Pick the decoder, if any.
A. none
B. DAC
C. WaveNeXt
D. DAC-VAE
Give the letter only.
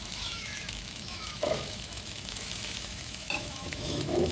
D